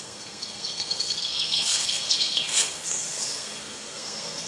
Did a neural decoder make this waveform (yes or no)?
yes